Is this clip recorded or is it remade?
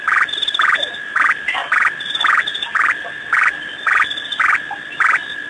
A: recorded